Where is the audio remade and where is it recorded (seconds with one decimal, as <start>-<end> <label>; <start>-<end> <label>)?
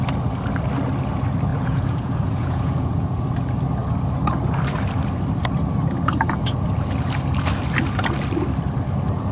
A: 0.0-1.5 recorded; 1.5-3.3 remade; 3.3-9.3 recorded